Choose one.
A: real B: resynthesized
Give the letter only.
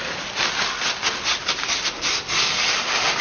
A